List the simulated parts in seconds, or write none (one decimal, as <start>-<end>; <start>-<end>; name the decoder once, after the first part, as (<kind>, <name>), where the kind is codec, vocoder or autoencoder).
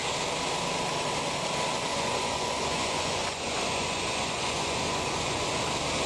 1.9-5.6 (vocoder, Vocos)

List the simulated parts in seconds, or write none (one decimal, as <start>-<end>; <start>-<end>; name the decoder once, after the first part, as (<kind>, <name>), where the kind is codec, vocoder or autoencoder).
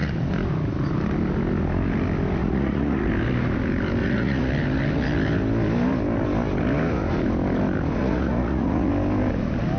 2.4-3.1 (vocoder, Vocos); 4.0-4.5; 8.0-8.9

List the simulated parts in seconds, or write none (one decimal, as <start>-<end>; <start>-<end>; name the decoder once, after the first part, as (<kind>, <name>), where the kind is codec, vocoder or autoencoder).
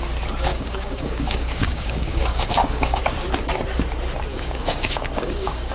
0.5-3.0 (codec, DAC); 4.3-5.7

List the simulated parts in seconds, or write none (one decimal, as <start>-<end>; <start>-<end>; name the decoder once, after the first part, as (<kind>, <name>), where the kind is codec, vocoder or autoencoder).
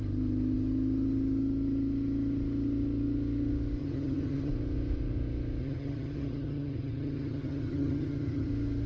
3.8-4.5 (vocoder, HiFi-GAN); 5.6-8.5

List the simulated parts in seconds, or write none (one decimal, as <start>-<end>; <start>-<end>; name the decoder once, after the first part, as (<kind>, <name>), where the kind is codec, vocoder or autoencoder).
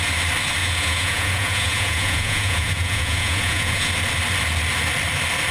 0.6-3.9 (vocoder, Vocos)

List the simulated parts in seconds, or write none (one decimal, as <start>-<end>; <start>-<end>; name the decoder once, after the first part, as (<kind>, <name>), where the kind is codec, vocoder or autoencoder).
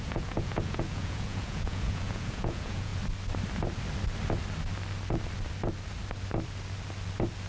0.0-2.9 (vocoder, Vocos)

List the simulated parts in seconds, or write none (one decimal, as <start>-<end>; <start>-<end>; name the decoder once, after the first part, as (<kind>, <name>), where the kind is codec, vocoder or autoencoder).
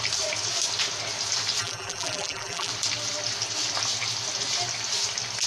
1.6-2.7 (vocoder, BigVGAN v2)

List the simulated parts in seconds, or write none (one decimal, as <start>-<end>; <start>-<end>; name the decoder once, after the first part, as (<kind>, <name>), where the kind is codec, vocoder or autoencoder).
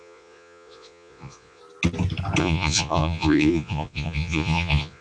0.0-1.6 (vocoder, Vocos); 2.4-5.0